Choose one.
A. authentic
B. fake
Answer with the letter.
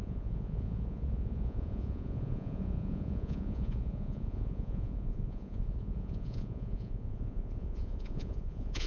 B